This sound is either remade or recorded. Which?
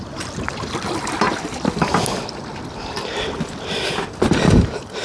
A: recorded